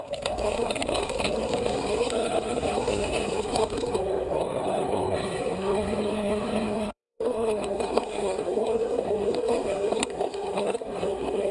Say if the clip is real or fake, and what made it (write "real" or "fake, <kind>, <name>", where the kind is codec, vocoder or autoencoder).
fake, codec, SNAC